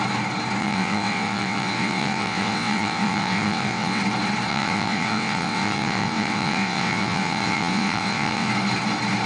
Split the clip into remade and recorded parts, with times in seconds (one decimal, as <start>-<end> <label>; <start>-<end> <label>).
0.0-0.6 recorded; 0.6-4.0 remade; 4.0-4.5 recorded; 4.5-8.5 remade; 8.5-9.3 recorded